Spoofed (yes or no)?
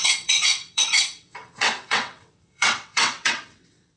yes